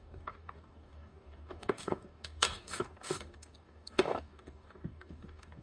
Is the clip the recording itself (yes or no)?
no